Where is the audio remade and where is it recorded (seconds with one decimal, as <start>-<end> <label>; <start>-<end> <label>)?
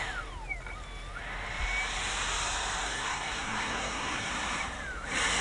0.0-2.8 recorded; 2.8-4.3 remade; 4.3-5.4 recorded